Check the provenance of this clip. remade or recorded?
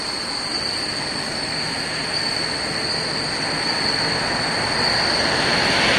recorded